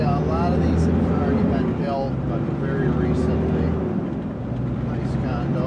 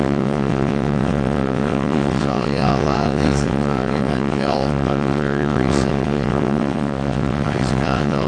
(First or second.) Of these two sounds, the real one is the first